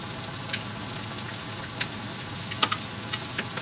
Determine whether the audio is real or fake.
real